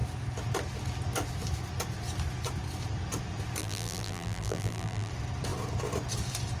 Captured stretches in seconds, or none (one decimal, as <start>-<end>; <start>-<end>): 0.0-3.6; 5.1-6.6